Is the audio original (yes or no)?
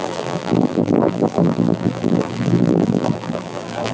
no